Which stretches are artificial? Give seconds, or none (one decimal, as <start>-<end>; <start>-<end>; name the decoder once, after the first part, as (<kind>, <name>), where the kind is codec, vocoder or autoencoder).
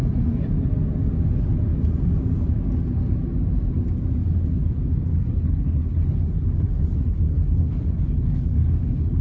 5.1-9.2 (codec, HILCodec)